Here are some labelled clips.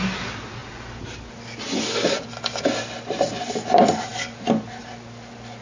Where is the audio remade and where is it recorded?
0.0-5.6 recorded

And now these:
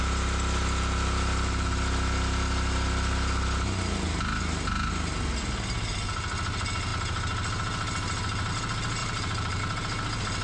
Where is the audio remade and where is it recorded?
0.0-9.0 recorded; 9.0-9.6 remade; 9.6-10.4 recorded

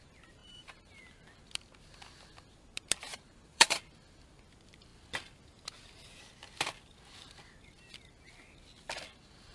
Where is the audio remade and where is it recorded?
0.0-0.4 recorded; 0.4-1.0 remade; 1.0-3.1 recorded; 3.1-3.8 remade; 3.8-9.5 recorded

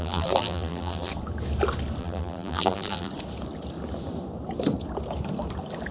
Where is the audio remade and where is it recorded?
0.0-1.1 remade; 1.1-2.0 recorded; 2.0-3.1 remade; 3.1-5.9 recorded

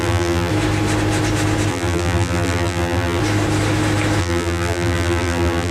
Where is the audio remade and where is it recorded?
0.0-0.5 remade; 0.5-1.7 recorded; 1.7-3.2 remade; 3.2-4.2 recorded; 4.2-5.7 remade